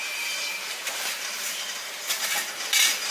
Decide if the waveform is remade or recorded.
remade